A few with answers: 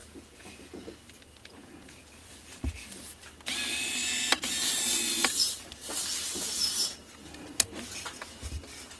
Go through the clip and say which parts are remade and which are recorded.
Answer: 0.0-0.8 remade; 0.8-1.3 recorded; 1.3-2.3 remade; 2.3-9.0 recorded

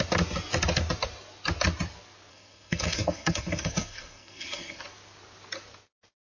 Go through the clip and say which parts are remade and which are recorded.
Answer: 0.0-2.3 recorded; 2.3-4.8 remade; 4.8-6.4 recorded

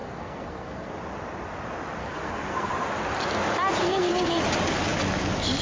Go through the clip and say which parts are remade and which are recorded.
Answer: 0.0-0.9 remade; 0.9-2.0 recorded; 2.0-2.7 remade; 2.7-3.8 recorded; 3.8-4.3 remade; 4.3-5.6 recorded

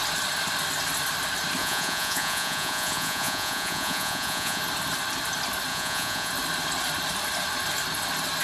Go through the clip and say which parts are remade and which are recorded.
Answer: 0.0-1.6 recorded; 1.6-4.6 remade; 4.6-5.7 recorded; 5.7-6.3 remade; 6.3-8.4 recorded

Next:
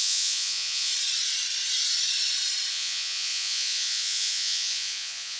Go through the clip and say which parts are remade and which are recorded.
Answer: 0.0-0.9 remade; 0.9-2.7 recorded; 2.7-5.4 remade